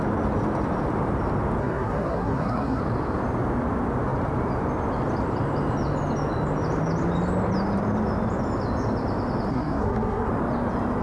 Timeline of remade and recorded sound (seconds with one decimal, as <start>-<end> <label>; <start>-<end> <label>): 0.0-1.6 recorded; 1.6-2.8 remade; 2.8-9.5 recorded; 9.5-10.3 remade; 10.3-11.0 recorded